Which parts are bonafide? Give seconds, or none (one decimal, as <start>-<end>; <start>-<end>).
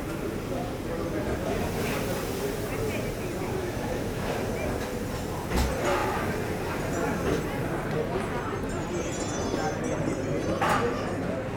0.0-3.6; 4.4-11.6